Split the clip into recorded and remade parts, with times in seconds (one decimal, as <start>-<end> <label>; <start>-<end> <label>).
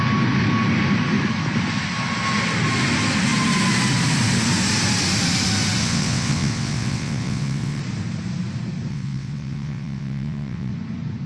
0.0-5.8 recorded; 5.8-7.8 remade; 7.8-8.9 recorded; 8.9-10.7 remade; 10.7-11.3 recorded